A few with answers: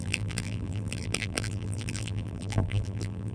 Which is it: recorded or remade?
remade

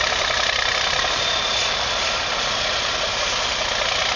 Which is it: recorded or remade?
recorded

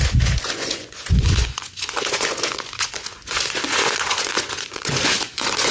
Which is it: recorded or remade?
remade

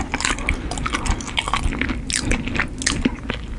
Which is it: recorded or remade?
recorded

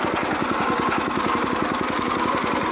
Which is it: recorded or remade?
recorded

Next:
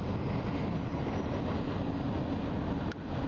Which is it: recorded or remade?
recorded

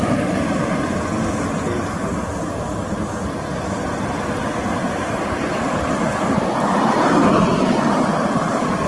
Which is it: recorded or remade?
remade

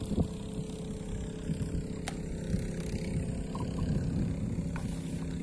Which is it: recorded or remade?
recorded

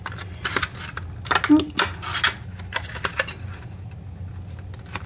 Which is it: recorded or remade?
recorded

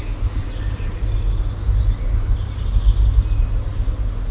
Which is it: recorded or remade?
recorded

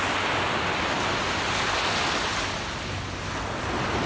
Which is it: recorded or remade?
recorded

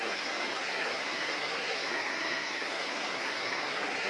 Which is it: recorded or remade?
remade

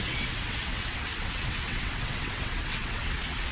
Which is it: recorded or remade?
remade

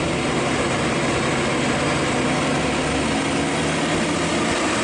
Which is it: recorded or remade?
recorded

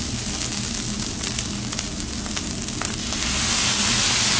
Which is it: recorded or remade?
recorded